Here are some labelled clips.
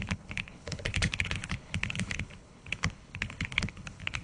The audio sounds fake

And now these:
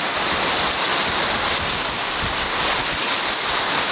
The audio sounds real